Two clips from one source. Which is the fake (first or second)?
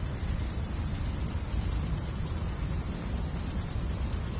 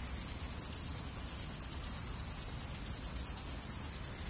first